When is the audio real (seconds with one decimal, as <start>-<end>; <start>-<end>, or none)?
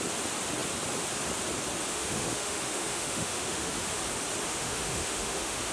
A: 0.0-1.9; 4.0-4.5